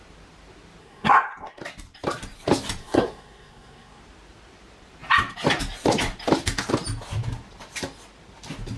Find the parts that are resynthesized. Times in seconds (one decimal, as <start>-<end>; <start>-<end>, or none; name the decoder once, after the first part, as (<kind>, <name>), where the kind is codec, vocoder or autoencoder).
0.8-1.6 (codec, SNAC); 2.8-4.0